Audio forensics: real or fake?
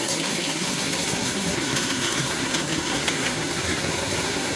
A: fake